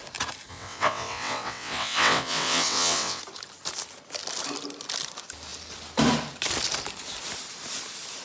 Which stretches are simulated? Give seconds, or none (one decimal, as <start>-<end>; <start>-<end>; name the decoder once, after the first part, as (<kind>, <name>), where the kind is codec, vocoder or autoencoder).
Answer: 0.5-3.2 (vocoder, WaveNeXt)